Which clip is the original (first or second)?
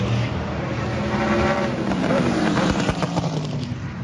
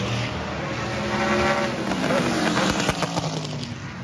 second